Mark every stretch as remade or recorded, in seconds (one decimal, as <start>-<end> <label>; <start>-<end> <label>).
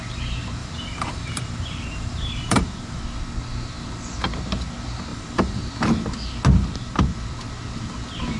0.0-0.6 recorded; 0.6-3.0 remade; 3.0-5.1 recorded; 5.1-5.7 remade; 5.7-8.4 recorded